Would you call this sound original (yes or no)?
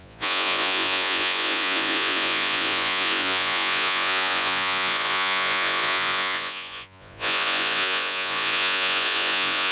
no